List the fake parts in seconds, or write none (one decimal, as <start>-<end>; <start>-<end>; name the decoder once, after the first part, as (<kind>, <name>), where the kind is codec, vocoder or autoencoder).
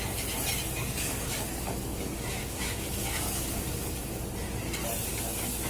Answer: 0.8-4.2 (codec, DAC); 5.1-5.7